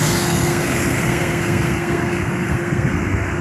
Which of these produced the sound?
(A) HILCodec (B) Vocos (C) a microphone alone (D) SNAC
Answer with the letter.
D